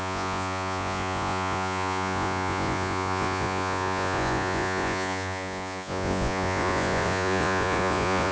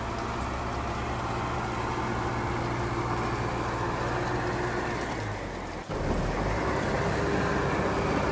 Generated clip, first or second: first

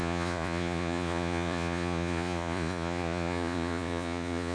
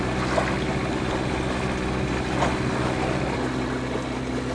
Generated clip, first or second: first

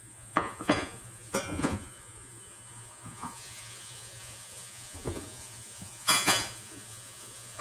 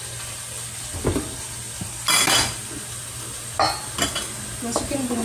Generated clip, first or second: first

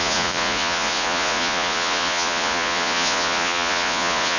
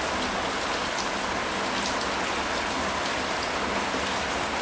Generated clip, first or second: first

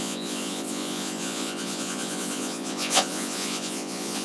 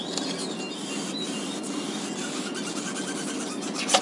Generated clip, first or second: first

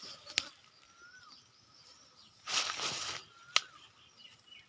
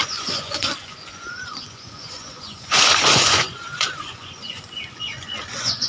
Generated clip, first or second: second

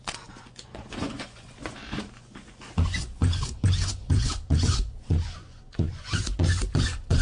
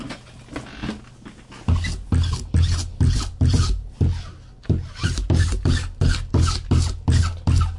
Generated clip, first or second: first